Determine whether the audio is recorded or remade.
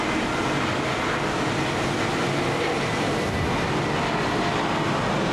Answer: recorded